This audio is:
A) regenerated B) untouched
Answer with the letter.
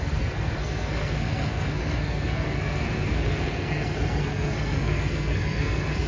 A